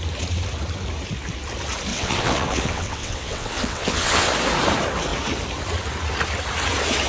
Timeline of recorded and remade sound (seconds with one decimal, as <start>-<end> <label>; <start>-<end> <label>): 0.0-1.9 recorded; 1.9-4.3 remade; 4.3-7.1 recorded